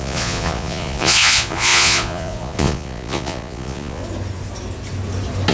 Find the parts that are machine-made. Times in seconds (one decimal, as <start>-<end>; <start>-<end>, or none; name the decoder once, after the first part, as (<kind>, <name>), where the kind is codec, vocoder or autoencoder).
0.0-4.0 (vocoder, Vocos)